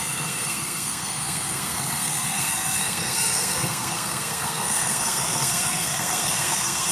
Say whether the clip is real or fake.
fake